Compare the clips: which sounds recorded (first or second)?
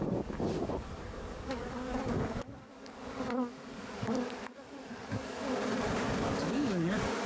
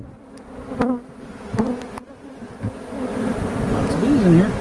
second